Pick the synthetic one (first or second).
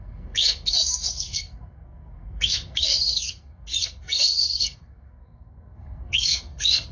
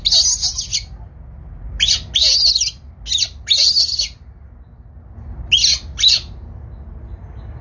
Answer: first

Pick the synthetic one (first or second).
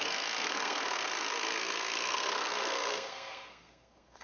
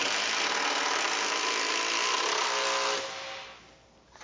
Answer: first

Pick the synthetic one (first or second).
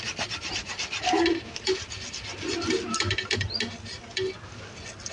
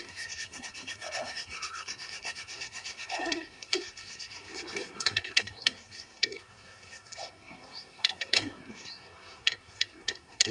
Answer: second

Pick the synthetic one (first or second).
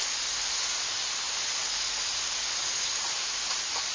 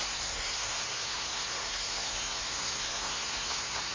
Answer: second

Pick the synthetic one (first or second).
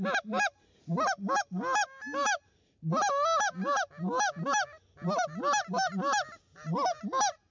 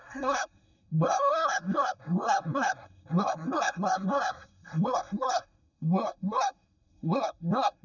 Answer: second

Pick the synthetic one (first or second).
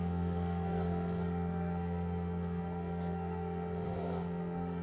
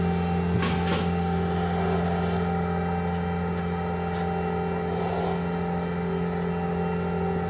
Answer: first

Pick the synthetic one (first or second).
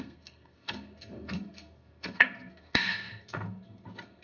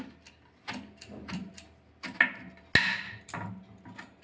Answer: first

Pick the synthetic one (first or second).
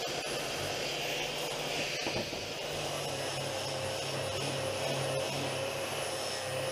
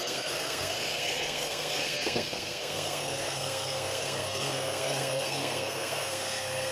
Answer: second